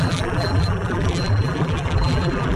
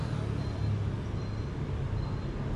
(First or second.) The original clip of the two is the second